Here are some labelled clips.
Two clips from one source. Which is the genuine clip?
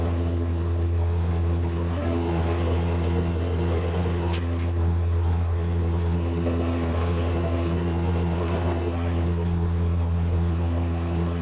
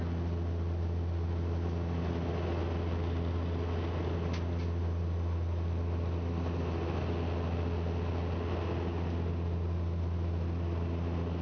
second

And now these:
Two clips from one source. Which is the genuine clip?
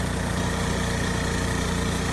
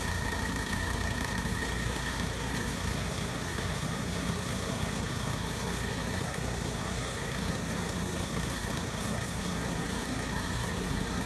first